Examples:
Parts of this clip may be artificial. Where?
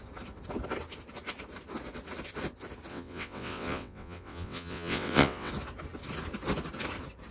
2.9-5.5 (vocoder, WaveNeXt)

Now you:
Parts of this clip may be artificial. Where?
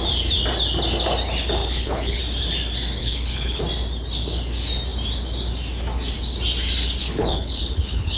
1.6-2.2 (codec, HILCodec); 3.0-3.6; 7.0-8.2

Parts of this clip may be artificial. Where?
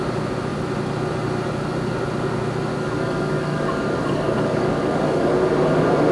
2.7-5.3 (codec, DAC)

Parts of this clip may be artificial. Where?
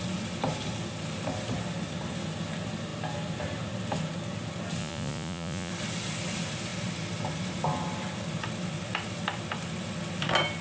4.8-5.7 (vocoder, Vocos)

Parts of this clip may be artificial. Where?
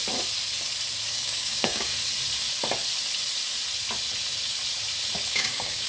1.1-1.9 (codec, DAC); 5.3-5.9